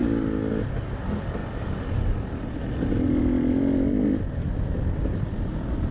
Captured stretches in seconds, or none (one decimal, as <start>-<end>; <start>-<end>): 0.0-5.9